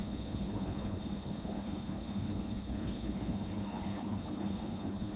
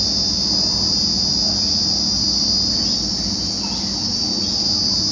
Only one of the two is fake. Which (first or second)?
first